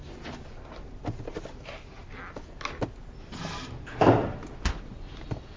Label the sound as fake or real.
real